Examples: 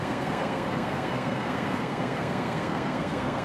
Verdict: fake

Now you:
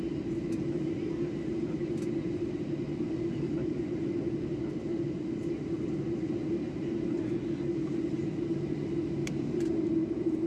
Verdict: real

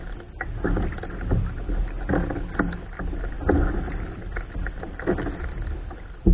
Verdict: real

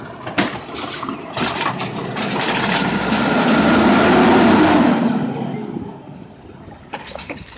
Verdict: real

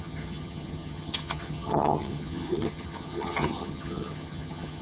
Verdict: fake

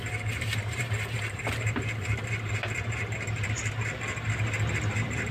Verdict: fake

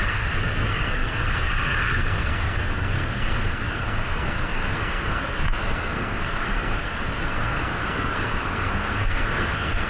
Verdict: fake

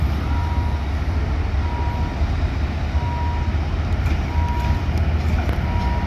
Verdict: real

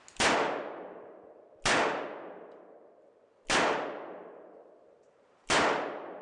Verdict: real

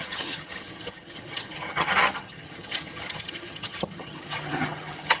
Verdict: fake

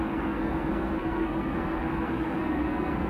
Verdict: fake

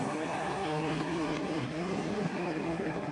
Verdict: fake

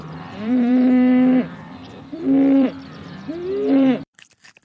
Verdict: fake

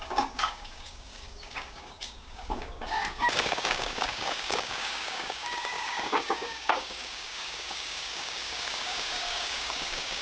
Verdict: fake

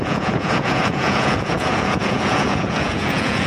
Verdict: fake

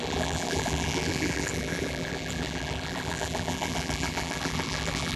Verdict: fake